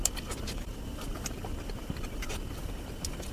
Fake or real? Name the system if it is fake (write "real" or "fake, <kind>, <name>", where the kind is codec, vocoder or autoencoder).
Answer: real